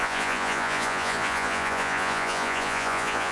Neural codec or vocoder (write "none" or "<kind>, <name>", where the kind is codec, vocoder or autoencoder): vocoder, Vocos